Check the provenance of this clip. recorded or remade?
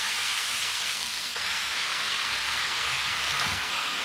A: remade